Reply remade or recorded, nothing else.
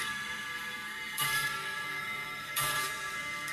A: remade